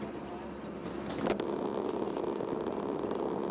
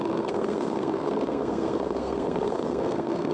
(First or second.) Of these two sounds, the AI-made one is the second